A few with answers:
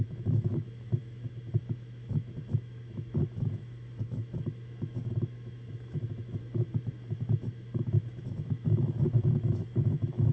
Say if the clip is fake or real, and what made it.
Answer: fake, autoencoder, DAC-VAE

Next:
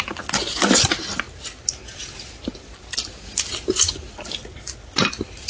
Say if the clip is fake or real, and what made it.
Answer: real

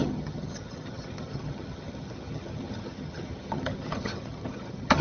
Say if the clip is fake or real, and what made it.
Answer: fake, vocoder, HiFi-GAN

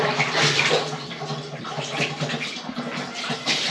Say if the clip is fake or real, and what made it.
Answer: real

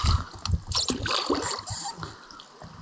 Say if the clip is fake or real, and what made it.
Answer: real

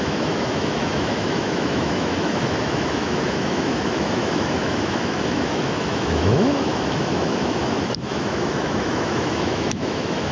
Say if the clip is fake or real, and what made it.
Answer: fake, autoencoder, DAC-VAE